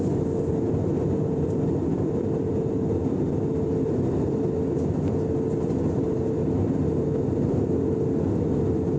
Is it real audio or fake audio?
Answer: real